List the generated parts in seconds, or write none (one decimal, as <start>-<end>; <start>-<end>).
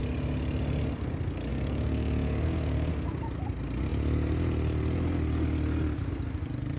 1.5-2.9